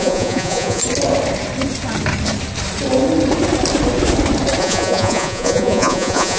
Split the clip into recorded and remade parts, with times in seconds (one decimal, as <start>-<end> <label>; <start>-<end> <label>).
0.0-0.8 remade; 0.8-4.6 recorded; 4.6-6.4 remade